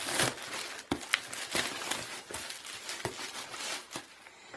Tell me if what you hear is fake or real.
real